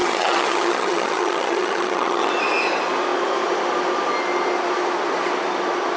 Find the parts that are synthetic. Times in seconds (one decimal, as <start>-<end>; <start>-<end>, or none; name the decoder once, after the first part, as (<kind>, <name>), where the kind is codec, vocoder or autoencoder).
0.0-2.3 (vocoder, HiFi-GAN)